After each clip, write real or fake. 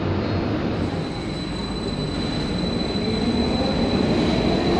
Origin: real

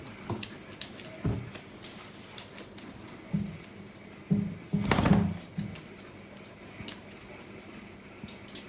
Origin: real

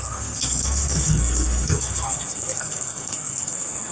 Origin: fake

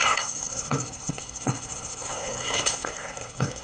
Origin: fake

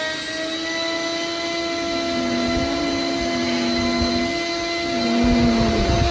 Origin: real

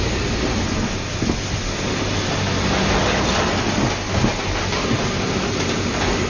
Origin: real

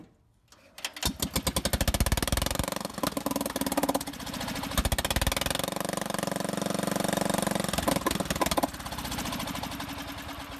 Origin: real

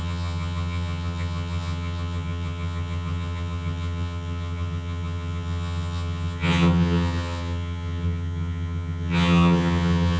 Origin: fake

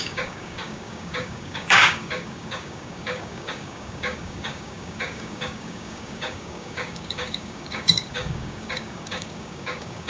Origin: fake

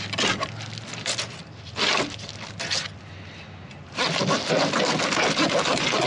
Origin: real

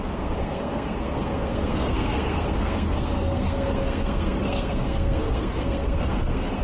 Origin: fake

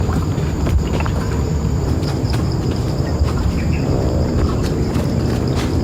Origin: fake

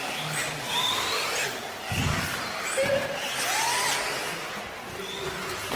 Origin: real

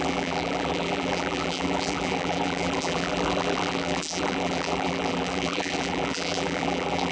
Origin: fake